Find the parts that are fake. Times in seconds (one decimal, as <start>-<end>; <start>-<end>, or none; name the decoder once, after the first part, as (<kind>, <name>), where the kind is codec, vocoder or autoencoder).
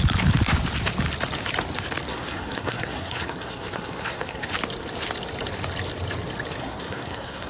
2.1-4.5 (codec, SNAC); 6.6-7.5